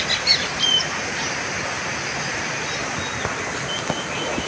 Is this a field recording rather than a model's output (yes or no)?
yes